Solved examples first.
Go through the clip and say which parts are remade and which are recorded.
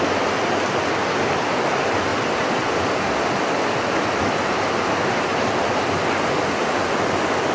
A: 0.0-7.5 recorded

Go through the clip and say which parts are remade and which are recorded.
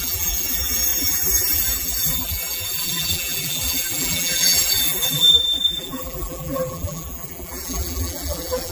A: 0.0-8.7 remade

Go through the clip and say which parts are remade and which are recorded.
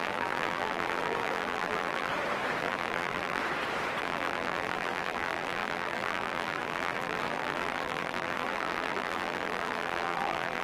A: 0.0-2.1 remade; 2.1-2.6 recorded; 2.6-3.4 remade; 3.4-4.0 recorded; 4.0-10.6 remade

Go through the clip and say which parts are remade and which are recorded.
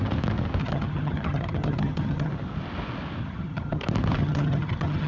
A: 0.0-0.6 recorded; 0.6-2.3 remade; 2.3-3.2 recorded; 3.2-3.8 remade; 3.8-4.2 recorded; 4.2-5.1 remade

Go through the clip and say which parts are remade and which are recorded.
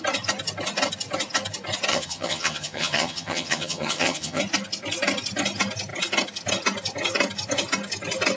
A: 0.0-1.9 recorded; 1.9-4.4 remade; 4.4-8.4 recorded